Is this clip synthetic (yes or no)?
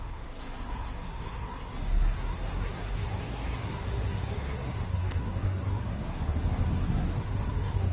yes